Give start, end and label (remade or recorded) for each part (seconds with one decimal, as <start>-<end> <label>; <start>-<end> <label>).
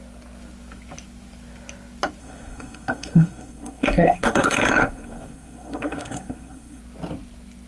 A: 0.0-2.2 recorded; 2.2-6.8 remade; 6.8-7.7 recorded